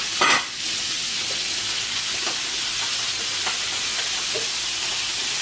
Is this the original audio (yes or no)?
yes